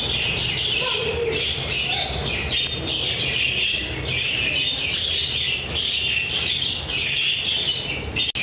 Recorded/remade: recorded